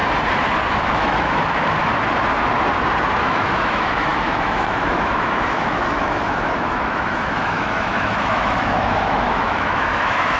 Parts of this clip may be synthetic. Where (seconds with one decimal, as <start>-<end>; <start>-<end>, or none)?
0.9-1.9; 3.2-10.4